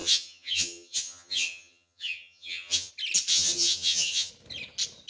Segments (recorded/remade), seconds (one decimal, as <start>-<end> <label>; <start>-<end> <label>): 0.0-2.9 remade; 2.9-3.3 recorded; 3.3-4.3 remade; 4.3-5.1 recorded